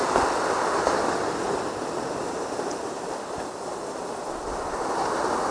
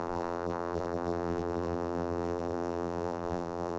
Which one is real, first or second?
first